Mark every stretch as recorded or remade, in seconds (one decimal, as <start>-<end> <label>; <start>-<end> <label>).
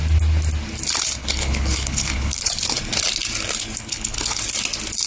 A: 0.0-1.2 recorded; 1.2-2.5 remade; 2.5-3.8 recorded; 3.8-4.4 remade; 4.4-5.1 recorded